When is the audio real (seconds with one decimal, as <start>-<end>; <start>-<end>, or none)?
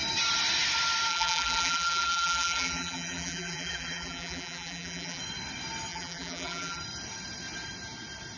0.0-1.1; 5.2-5.9; 6.8-8.4